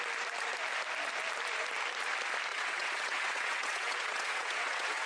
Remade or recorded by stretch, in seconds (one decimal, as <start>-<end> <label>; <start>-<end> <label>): 0.0-2.5 recorded; 2.5-5.1 remade